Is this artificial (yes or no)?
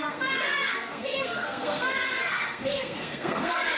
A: yes